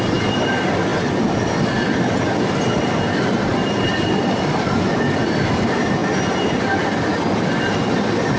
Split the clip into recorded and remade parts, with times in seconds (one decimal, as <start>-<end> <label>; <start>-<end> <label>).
0.0-8.4 remade